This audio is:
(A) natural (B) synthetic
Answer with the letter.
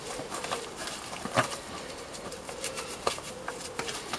A